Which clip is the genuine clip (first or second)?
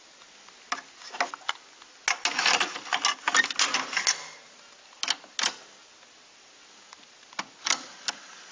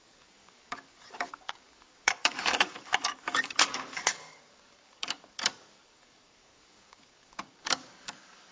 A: first